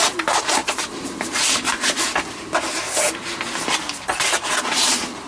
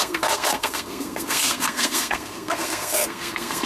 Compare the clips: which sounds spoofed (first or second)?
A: second